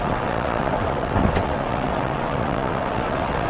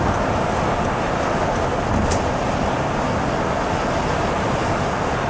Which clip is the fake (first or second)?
first